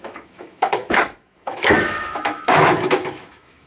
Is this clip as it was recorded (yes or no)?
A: no